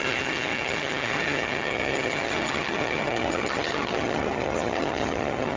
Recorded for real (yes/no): no